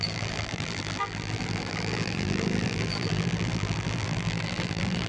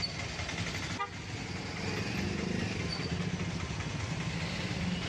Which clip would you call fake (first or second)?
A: first